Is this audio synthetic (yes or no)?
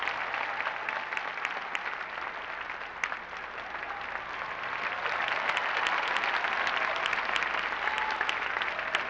no